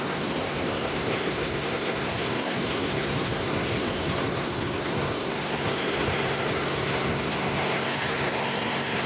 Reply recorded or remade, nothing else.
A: remade